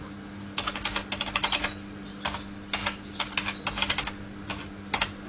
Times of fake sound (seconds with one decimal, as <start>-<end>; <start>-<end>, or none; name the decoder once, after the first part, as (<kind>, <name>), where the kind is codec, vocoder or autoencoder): none